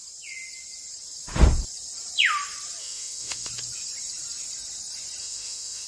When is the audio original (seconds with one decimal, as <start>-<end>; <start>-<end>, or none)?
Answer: 0.0-2.8; 3.5-5.2